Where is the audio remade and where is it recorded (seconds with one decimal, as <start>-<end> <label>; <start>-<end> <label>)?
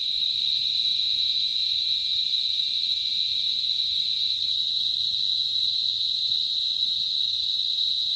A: 0.0-8.2 recorded